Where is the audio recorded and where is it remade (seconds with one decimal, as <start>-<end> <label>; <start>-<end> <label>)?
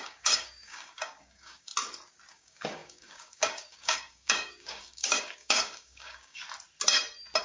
0.0-1.7 remade; 1.7-2.3 recorded; 2.3-6.4 remade; 6.4-7.4 recorded